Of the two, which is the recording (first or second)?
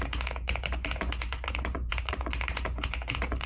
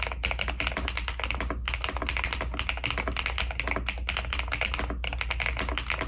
second